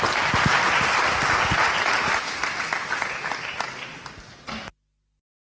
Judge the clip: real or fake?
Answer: real